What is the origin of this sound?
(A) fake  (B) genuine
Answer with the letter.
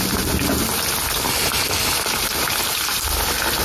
B